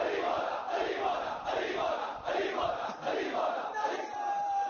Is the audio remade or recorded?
remade